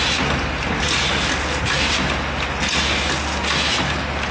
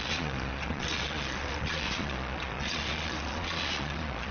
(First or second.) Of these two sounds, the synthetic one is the second